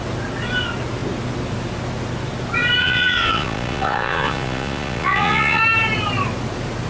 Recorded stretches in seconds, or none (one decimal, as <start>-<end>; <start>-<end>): 0.0-2.8; 5.6-6.9